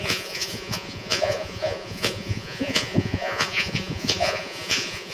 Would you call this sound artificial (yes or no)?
yes